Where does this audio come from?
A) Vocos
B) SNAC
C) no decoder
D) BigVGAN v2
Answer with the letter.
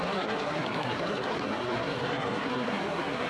B